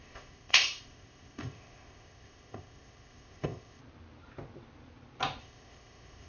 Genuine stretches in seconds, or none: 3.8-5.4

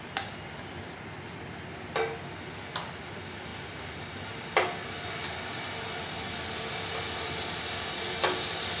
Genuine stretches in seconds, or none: 0.0-8.8